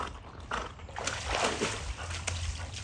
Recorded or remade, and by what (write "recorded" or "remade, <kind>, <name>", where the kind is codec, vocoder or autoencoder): recorded